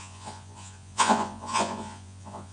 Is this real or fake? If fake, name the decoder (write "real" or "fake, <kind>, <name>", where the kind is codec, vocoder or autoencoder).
fake, vocoder, Vocos